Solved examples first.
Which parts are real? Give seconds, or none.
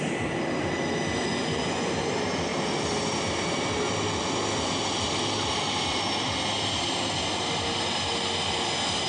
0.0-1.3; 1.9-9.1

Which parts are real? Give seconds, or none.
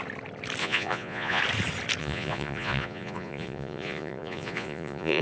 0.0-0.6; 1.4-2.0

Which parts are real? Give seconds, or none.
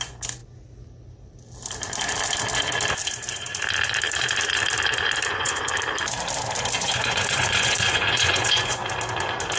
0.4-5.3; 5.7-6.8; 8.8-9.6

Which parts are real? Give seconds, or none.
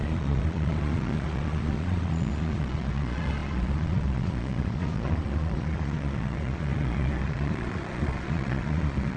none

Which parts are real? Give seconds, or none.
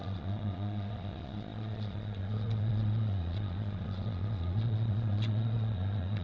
none